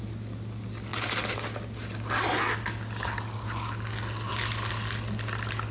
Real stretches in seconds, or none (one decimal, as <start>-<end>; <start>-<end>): 0.0-5.7